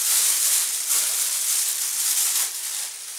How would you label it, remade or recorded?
recorded